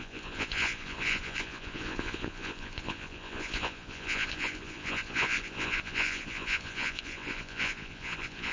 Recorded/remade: remade